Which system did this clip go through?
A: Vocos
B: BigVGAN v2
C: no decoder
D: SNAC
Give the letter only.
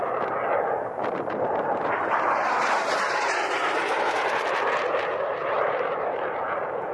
B